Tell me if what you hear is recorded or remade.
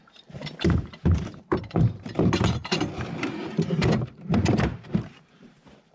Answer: remade